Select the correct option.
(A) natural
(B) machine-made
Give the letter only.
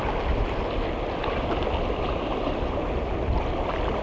A